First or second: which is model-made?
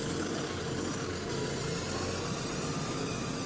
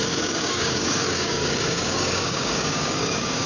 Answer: second